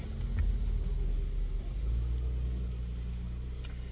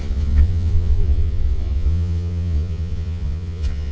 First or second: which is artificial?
second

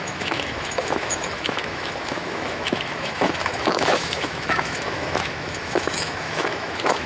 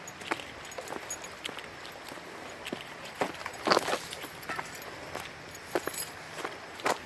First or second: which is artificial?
first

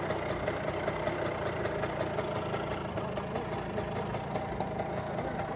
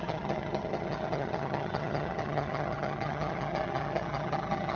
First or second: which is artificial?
second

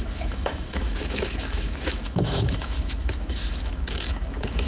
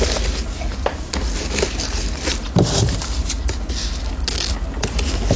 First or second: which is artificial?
first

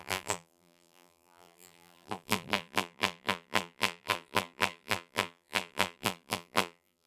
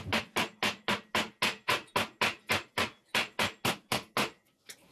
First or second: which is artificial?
first